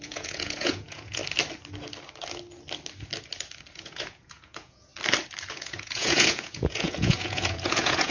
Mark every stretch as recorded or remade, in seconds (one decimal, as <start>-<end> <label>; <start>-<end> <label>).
0.0-1.2 remade; 1.2-3.7 recorded; 3.7-4.9 remade; 4.9-5.5 recorded; 5.5-8.1 remade